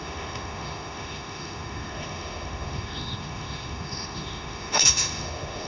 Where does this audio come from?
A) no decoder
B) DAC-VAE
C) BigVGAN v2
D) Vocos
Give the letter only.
B